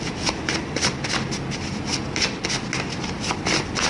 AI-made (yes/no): no